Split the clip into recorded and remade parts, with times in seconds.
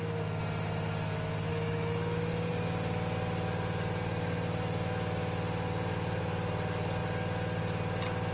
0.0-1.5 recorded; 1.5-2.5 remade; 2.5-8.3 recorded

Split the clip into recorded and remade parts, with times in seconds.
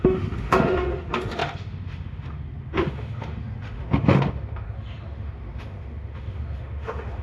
0.0-7.2 remade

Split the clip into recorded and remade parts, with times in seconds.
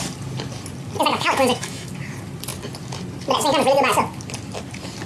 0.0-1.1 recorded; 1.1-1.9 remade; 1.9-5.1 recorded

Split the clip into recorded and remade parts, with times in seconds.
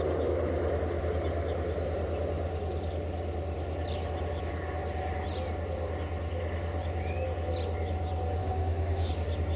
0.0-8.4 recorded; 8.4-9.1 remade; 9.1-9.6 recorded